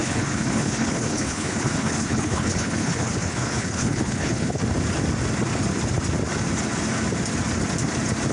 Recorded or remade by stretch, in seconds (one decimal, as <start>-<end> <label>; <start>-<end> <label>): 0.0-4.6 remade; 4.6-8.3 recorded